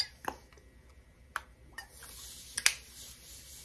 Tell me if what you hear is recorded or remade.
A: recorded